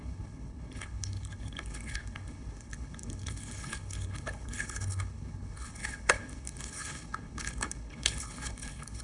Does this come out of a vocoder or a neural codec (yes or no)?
yes